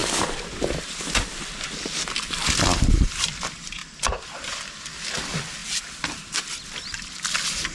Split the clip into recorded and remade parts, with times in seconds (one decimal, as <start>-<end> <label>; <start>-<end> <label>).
0.0-7.7 recorded